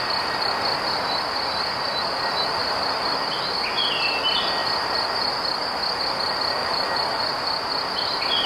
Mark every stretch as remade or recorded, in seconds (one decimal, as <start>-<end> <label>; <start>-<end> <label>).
0.0-2.6 recorded; 2.6-3.2 remade; 3.2-6.6 recorded; 6.6-7.2 remade; 7.2-8.5 recorded